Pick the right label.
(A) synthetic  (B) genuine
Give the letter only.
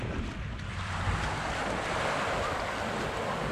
A